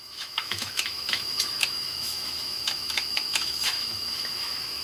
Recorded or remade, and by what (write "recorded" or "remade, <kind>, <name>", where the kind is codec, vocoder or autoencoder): remade, autoencoder, DAC-VAE